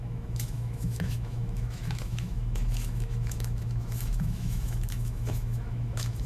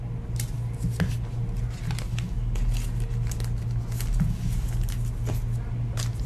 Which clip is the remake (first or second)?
first